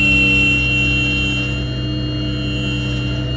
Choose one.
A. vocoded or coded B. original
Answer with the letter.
B